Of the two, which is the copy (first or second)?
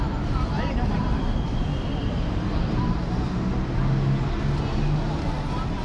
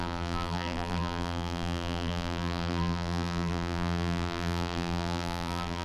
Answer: second